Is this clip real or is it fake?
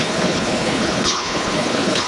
fake